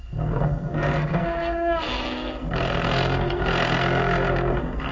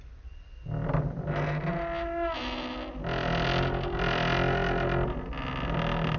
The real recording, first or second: second